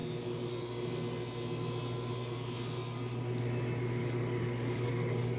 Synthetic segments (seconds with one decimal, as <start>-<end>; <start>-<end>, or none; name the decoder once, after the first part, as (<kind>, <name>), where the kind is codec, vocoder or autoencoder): 4.0-5.4 (codec, DAC)